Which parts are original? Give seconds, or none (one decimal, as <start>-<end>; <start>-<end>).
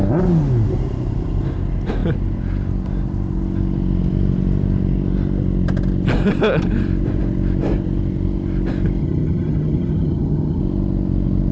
0.0-9.0; 10.6-11.5